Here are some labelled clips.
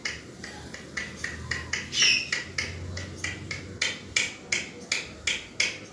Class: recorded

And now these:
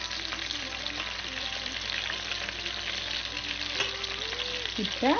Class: recorded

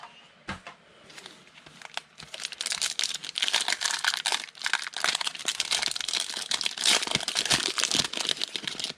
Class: recorded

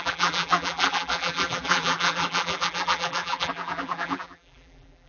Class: remade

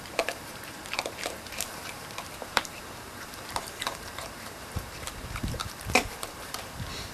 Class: remade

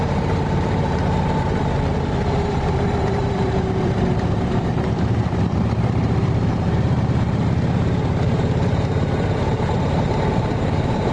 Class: remade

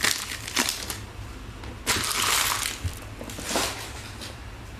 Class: recorded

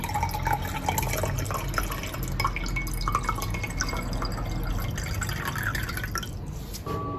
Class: recorded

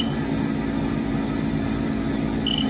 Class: recorded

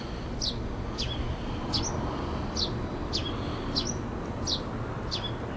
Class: recorded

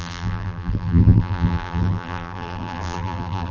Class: remade